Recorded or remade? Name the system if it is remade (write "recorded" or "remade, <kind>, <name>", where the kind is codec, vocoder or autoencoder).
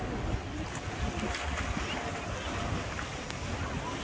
recorded